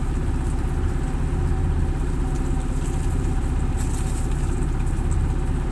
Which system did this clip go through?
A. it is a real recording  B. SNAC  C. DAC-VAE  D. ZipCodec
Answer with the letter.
A